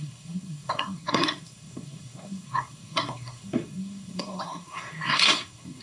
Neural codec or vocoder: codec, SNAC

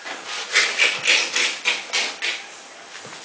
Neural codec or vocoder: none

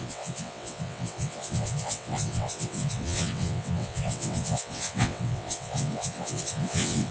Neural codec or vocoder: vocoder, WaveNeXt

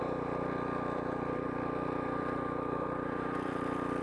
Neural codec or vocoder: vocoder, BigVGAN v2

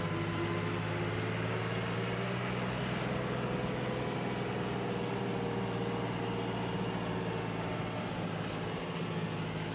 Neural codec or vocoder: none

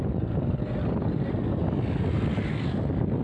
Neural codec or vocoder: none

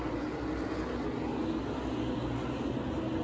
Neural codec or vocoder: none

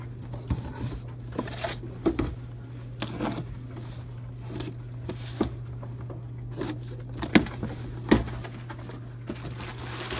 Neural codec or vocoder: none